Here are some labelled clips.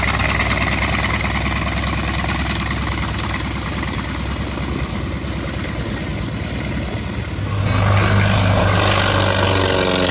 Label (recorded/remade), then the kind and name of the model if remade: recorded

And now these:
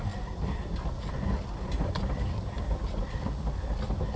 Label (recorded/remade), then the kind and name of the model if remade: recorded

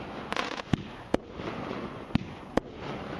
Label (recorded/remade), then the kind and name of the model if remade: remade, vocoder, Vocos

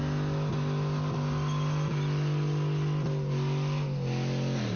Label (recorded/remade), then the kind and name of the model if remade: recorded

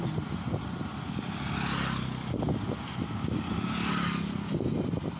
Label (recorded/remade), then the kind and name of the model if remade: recorded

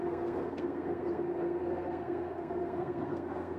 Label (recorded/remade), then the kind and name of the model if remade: remade, codec, SNAC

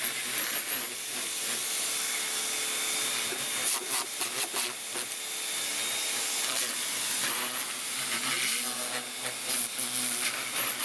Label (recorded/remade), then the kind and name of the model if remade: recorded